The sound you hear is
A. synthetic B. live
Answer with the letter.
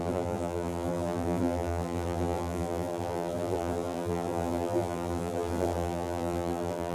A